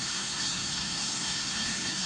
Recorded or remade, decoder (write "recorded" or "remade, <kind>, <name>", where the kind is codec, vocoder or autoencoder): remade, codec, SNAC